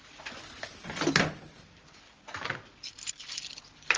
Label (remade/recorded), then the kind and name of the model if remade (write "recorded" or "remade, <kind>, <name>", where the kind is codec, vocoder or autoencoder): recorded